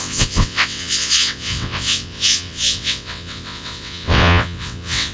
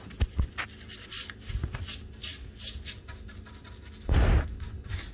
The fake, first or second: first